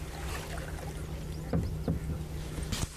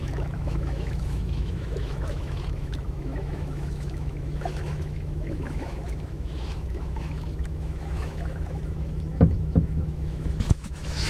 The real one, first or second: first